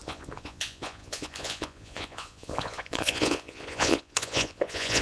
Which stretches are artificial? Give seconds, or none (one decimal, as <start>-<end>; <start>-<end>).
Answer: 0.0-5.0